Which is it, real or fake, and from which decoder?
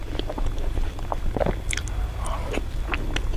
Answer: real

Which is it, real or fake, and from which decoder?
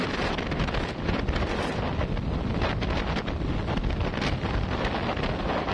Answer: real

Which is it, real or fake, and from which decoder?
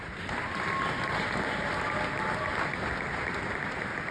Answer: real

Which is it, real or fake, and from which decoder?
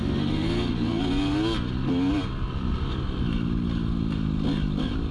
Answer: real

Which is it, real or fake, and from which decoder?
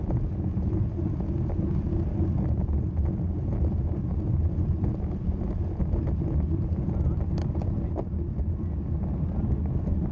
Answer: real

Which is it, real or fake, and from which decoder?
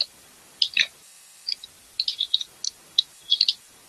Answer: fake, vocoder, BigVGAN v2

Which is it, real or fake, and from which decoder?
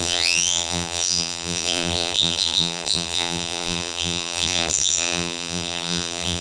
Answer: fake, vocoder, BigVGAN v2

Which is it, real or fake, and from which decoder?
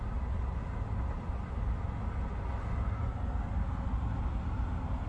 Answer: real